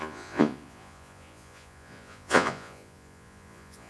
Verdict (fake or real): fake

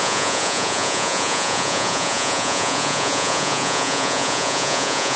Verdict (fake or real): fake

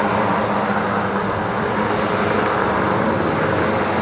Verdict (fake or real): real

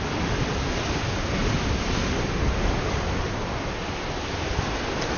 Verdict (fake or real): real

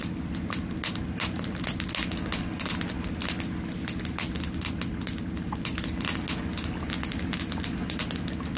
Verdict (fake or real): real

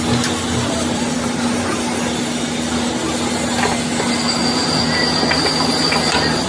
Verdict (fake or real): real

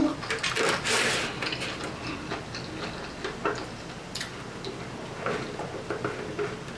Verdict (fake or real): real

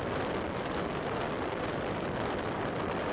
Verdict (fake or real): fake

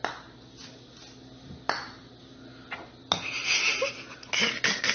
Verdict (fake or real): real